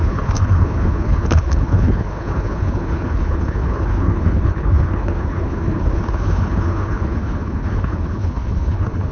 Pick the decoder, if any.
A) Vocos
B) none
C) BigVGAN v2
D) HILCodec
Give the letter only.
D